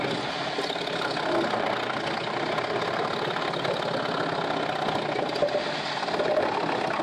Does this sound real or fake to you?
real